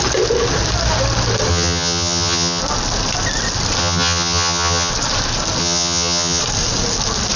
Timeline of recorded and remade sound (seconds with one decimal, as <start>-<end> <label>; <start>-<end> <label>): 0.0-1.5 recorded; 1.5-2.6 remade; 2.6-3.8 recorded; 3.8-4.9 remade; 4.9-5.6 recorded; 5.6-6.4 remade; 6.4-7.4 recorded